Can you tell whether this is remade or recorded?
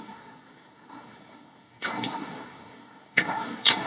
remade